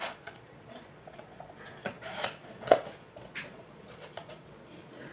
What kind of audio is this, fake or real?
fake